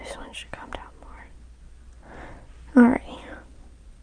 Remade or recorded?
recorded